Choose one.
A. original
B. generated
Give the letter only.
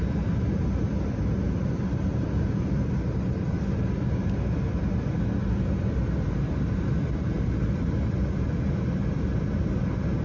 A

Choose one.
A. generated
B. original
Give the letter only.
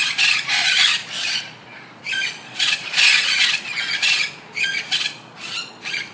A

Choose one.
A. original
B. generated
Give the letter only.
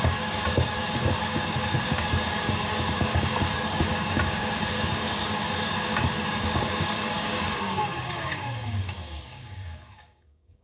B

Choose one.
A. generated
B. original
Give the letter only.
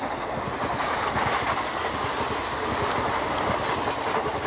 B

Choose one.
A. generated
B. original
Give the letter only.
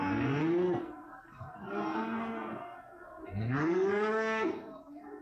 A